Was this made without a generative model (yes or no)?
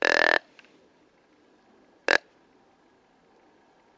yes